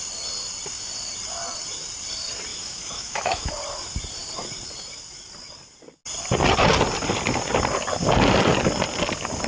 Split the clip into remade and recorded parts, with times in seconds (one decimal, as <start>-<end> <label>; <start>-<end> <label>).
0.0-2.5 recorded; 2.5-3.5 remade; 3.5-9.5 recorded